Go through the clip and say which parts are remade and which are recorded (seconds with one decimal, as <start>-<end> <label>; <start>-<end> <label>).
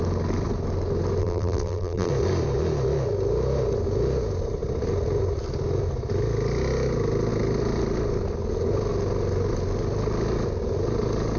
0.0-1.2 recorded; 1.2-2.1 remade; 2.1-11.4 recorded